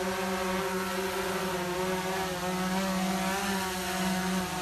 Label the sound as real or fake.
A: real